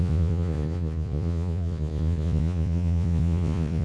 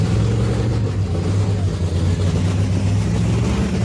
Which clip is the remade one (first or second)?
first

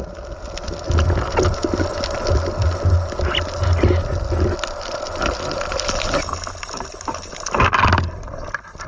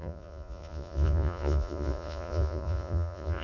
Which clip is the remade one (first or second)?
second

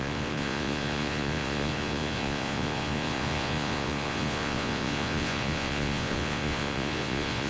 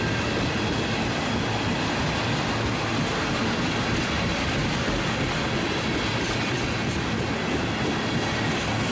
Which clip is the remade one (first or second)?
first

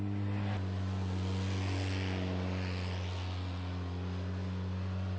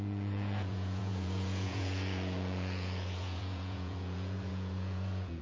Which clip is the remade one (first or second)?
second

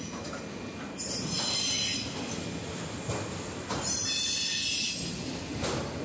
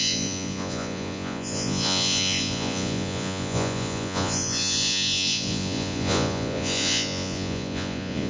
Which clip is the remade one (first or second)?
second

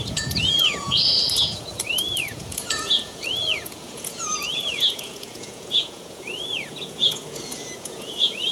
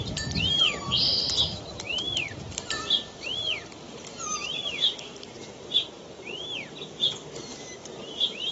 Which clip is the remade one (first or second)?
first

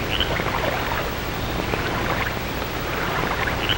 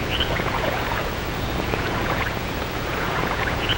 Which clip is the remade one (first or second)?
second